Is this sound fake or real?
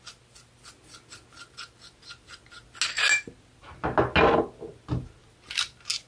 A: real